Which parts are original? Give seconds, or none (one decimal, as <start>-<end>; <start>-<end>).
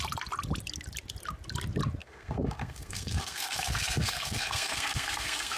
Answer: 0.0-2.0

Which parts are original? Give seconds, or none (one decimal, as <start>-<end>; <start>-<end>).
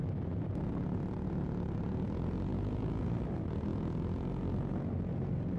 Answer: 0.0-2.5; 3.0-5.6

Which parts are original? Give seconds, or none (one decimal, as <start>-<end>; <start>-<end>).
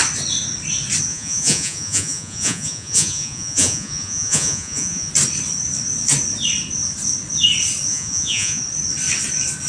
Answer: 0.0-1.1; 5.1-7.9; 8.6-9.7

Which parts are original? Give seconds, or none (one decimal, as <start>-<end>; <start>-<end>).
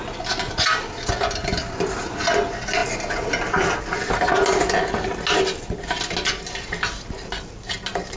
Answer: 0.0-8.2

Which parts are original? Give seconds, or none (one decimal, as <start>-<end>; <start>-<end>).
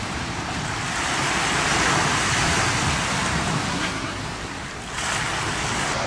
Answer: 0.0-3.7; 4.2-6.1